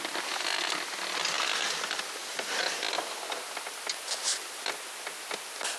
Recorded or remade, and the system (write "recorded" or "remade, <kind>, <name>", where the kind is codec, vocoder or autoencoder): recorded